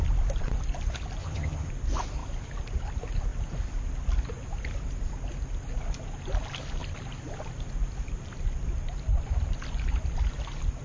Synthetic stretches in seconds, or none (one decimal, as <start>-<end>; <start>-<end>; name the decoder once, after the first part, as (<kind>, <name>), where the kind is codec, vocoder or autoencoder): 1.2-1.7 (vocoder, HiFi-GAN)